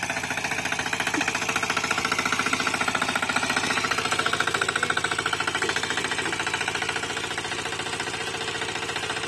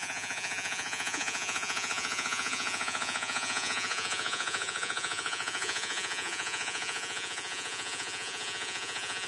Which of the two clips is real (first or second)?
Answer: first